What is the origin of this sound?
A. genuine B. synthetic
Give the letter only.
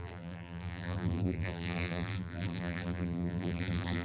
B